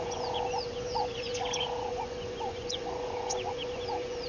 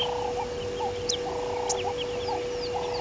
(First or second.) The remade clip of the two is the first